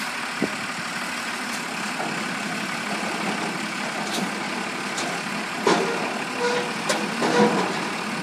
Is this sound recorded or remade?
recorded